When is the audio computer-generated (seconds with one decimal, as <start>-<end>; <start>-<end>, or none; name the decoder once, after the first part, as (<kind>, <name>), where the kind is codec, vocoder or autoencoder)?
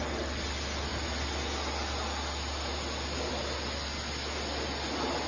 none